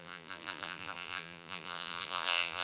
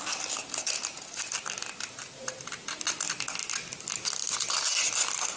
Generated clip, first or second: first